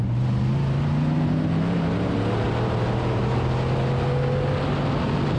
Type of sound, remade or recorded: recorded